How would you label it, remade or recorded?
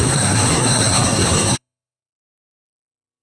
remade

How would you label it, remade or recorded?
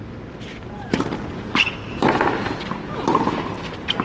recorded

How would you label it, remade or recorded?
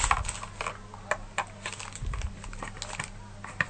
recorded